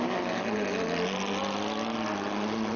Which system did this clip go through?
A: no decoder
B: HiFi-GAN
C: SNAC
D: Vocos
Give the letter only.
A